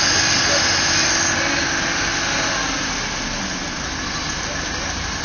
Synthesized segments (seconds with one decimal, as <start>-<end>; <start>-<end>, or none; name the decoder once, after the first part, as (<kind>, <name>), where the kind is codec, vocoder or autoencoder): 2.1-3.4 (vocoder, BigVGAN v2)